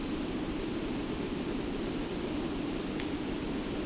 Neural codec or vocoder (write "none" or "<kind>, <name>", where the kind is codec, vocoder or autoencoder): none